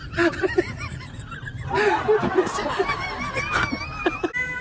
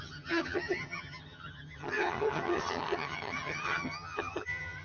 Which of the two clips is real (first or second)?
first